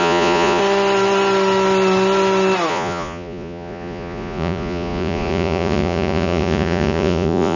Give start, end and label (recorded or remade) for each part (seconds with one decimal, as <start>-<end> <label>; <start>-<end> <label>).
0.0-0.6 remade; 0.6-2.7 recorded; 2.7-7.6 remade